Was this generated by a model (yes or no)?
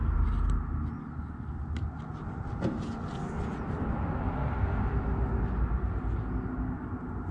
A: no